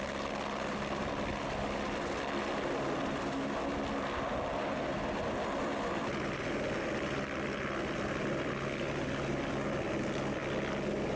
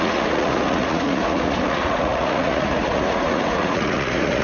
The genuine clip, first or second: first